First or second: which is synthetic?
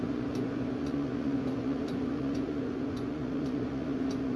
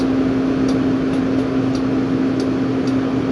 first